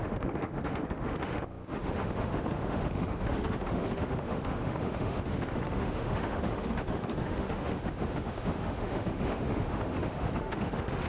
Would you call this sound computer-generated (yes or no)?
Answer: yes